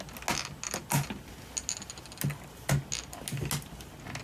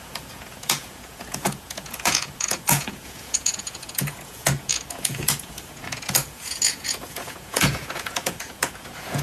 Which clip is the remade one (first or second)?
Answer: second